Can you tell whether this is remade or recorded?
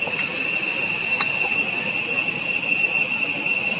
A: recorded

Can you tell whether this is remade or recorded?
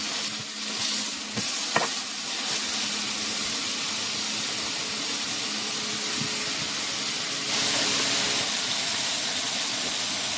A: recorded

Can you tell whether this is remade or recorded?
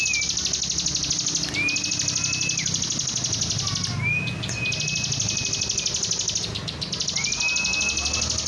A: recorded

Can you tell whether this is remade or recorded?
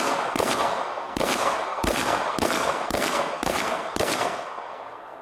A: remade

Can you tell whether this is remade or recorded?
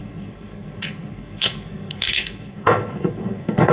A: remade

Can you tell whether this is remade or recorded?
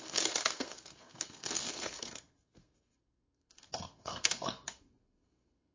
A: remade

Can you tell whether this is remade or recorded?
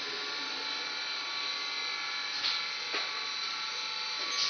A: recorded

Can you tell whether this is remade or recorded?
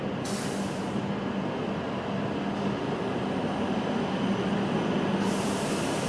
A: recorded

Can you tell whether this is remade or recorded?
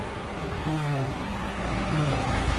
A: remade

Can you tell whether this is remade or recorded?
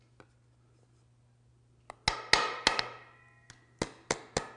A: recorded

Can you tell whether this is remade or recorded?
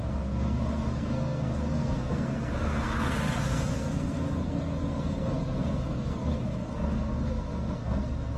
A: remade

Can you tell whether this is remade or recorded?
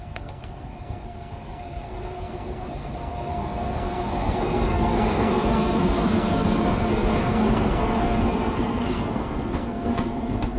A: remade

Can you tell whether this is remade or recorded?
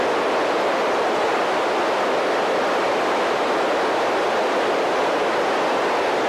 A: recorded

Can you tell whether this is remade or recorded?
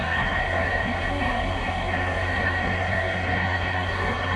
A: remade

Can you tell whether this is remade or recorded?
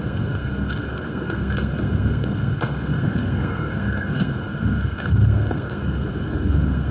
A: remade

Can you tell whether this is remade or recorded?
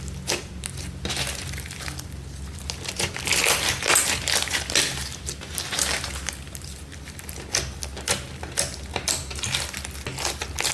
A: recorded